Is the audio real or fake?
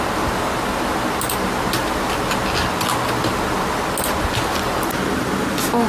real